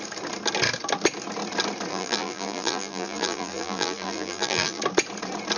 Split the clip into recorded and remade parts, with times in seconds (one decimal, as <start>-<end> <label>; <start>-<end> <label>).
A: 0.0-1.9 recorded; 1.9-4.8 remade; 4.8-5.6 recorded